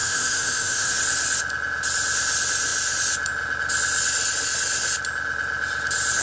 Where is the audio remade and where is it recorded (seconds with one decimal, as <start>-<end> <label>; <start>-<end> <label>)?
0.0-0.9 remade; 0.9-6.2 recorded